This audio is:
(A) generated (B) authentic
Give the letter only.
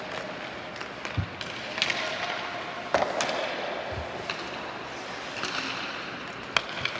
B